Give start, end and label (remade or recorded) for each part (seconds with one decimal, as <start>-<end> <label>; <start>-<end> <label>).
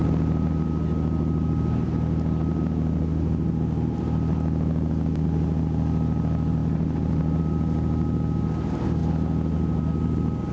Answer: 0.0-6.6 recorded; 6.6-7.4 remade; 7.4-10.5 recorded